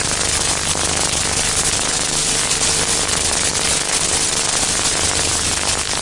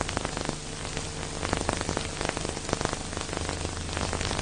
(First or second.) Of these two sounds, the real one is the second